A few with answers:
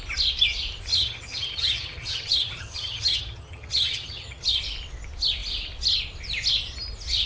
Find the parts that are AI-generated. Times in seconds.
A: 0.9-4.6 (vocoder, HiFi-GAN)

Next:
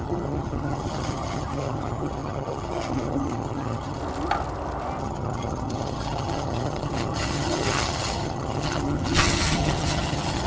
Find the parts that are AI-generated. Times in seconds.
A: 0.0-4.0 (vocoder, HiFi-GAN); 5.0-10.5

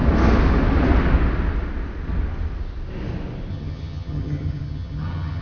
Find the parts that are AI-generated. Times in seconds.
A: 3.5-5.4 (vocoder, HiFi-GAN)

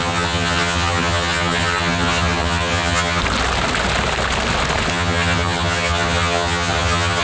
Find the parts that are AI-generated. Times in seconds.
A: 0.0-3.2 (vocoder, HiFi-GAN); 4.9-7.2

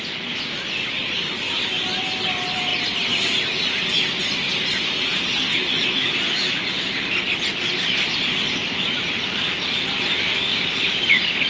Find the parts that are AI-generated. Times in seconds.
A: none

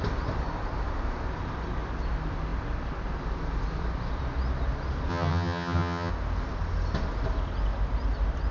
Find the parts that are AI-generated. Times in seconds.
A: 5.1-6.1 (vocoder, HiFi-GAN)